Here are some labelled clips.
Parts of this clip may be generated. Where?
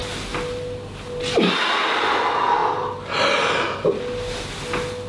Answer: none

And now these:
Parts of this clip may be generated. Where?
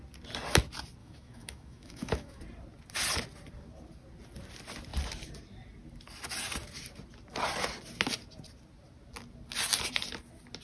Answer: 1.0-2.4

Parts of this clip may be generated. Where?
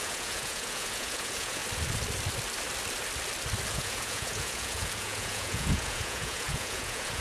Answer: 0.0-1.6; 3.7-7.2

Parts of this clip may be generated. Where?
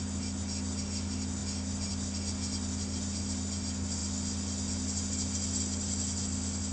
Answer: none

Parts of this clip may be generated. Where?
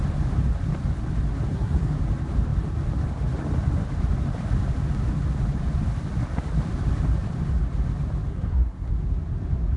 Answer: 1.5-2.0; 8.3-8.9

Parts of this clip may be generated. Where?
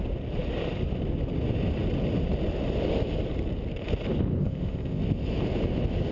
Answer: 4.4-5.0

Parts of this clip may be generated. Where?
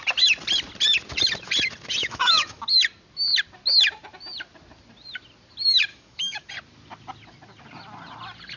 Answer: 2.0-2.6; 5.9-6.5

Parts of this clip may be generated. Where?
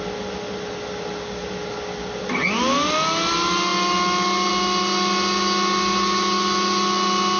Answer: none